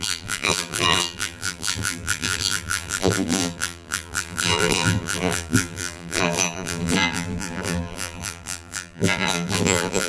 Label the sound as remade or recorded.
remade